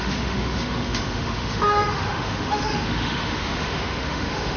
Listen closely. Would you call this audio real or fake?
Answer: fake